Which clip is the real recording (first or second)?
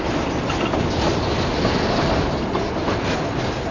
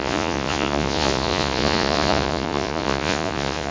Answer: first